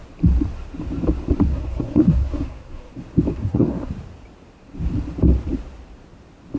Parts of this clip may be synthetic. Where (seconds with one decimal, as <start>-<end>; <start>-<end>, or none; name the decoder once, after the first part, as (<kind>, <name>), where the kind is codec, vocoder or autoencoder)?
1.5-2.9 (codec, SNAC); 3.3-3.9